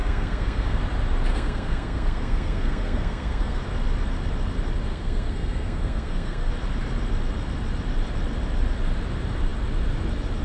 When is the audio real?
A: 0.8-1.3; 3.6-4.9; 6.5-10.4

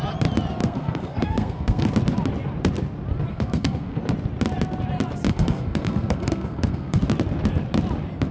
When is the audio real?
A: 0.0-0.6; 1.9-3.3; 4.0-5.3; 7.0-8.3

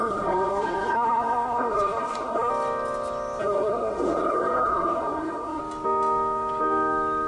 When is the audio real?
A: 2.5-3.4; 5.6-7.3

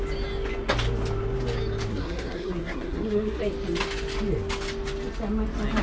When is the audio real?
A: 0.0-1.9; 3.4-5.8

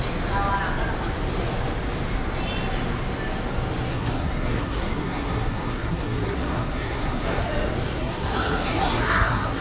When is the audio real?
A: 0.0-3.9; 7.4-8.0